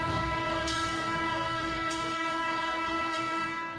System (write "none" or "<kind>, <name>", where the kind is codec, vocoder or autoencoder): codec, DAC